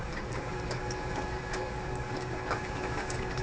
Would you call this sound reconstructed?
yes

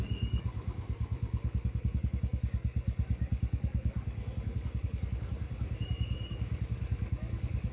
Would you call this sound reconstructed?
yes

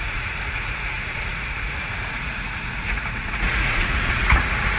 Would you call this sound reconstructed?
yes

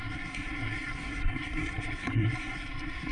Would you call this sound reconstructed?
yes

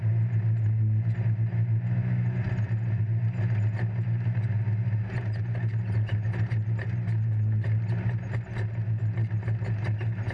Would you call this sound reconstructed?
no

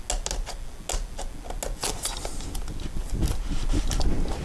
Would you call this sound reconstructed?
no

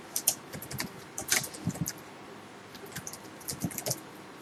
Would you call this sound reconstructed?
yes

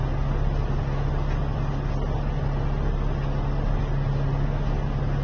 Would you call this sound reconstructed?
no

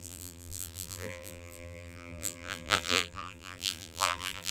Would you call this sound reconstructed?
yes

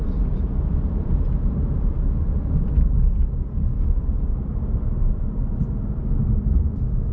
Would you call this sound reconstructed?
no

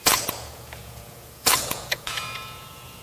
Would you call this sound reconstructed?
yes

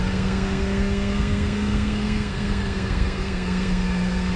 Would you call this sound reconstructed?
yes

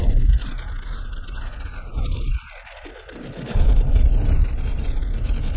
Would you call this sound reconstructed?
no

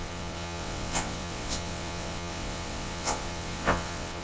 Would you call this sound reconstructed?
yes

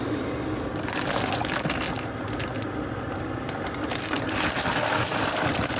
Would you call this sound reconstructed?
no